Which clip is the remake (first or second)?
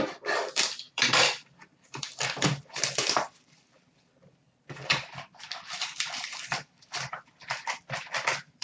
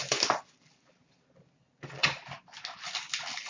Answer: first